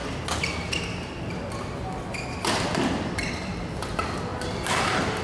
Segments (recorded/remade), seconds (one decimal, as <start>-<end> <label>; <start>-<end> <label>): 0.0-5.2 recorded